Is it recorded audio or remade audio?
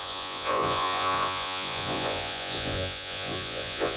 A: remade